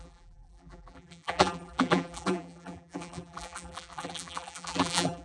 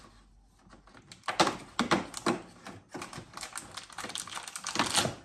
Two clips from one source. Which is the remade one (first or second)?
first